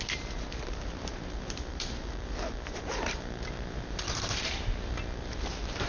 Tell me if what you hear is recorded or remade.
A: remade